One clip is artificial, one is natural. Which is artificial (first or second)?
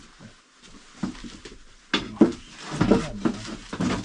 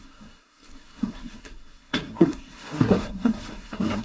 second